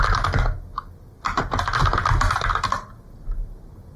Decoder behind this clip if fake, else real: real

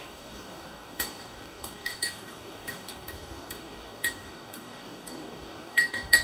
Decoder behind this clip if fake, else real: fake, codec, DAC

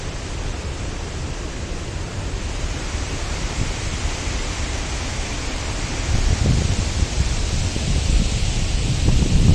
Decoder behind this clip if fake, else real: fake, vocoder, BigVGAN v2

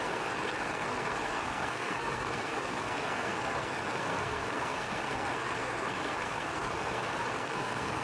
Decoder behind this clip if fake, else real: fake, codec, SNAC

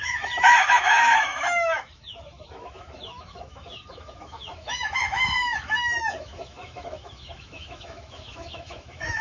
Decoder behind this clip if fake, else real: fake, autoencoder, DAC-VAE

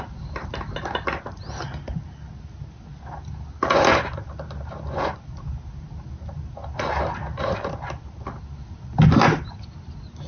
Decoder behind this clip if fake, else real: real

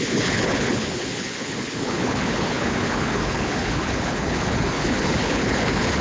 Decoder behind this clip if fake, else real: fake, codec, HILCodec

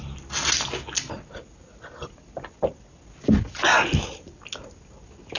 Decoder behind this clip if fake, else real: real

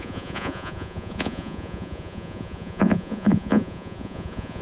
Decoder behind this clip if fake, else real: fake, vocoder, Vocos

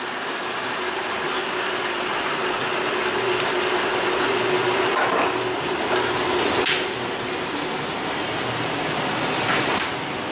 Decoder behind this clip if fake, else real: real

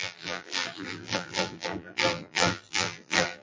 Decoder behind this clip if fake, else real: fake, vocoder, BigVGAN v2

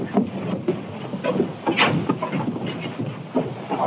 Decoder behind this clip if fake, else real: real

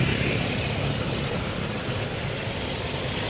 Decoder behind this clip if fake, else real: real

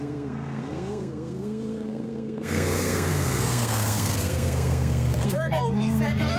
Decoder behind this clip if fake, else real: fake, codec, SNAC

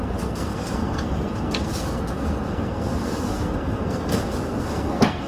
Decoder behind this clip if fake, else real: fake, codec, SNAC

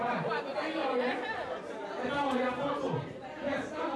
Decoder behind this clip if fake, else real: fake, vocoder, BigVGAN v2